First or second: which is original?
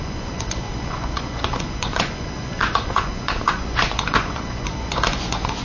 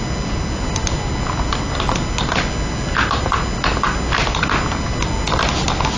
second